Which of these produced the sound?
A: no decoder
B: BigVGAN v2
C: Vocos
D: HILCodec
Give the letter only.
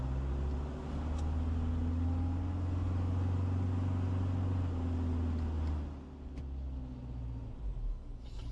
A